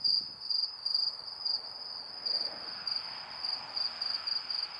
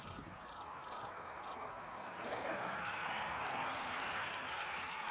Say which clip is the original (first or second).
first